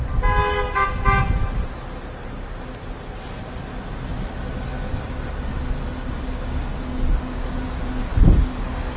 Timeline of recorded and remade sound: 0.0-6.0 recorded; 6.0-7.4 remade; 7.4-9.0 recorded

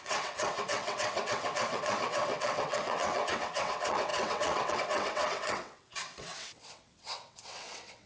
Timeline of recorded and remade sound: 0.0-8.1 remade

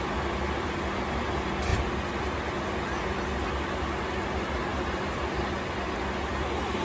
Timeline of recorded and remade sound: 0.0-6.8 recorded

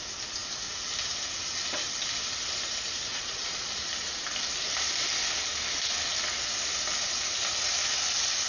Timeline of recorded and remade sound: 0.0-3.1 recorded; 3.1-3.8 remade; 3.8-8.5 recorded

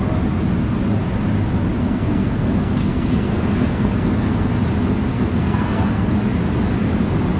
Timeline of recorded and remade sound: 0.0-1.8 recorded; 1.8-4.5 remade; 4.5-5.1 recorded; 5.1-6.1 remade; 6.1-7.4 recorded

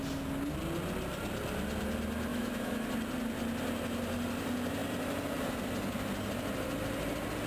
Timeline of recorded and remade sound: 0.0-2.3 recorded; 2.3-2.9 remade; 2.9-7.5 recorded

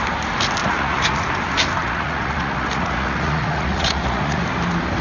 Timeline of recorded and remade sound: 0.0-0.6 recorded; 0.6-1.3 remade; 1.3-1.8 recorded; 1.8-4.4 remade; 4.4-5.0 recorded

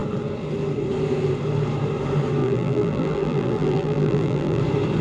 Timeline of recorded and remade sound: 0.0-2.4 recorded; 2.4-4.6 remade; 4.6-5.0 recorded